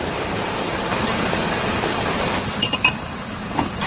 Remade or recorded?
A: remade